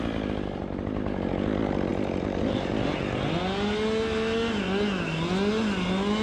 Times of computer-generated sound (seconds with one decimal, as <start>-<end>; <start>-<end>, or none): none